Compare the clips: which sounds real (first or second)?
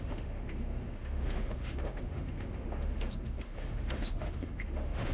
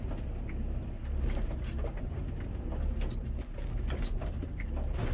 second